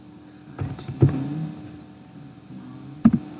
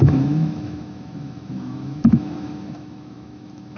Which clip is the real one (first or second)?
first